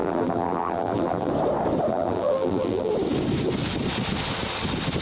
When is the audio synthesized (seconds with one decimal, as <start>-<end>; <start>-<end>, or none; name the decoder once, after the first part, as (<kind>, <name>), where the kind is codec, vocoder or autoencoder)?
0.0-1.3 (vocoder, BigVGAN v2); 1.9-2.9